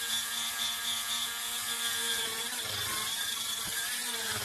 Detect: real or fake fake